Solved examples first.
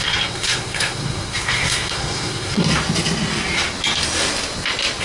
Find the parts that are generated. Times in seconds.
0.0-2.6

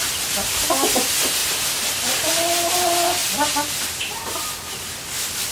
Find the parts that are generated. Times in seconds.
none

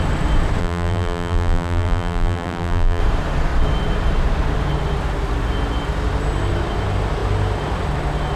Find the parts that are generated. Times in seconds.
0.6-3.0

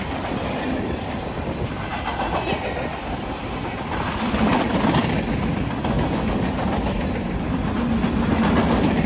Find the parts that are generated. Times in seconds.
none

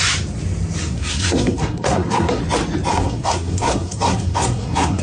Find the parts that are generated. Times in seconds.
0.8-2.4; 2.9-5.0

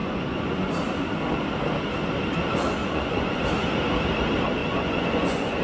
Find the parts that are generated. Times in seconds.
0.0-0.7; 2.8-3.4; 4.6-5.6